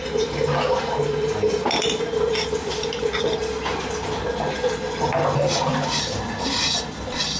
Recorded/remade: recorded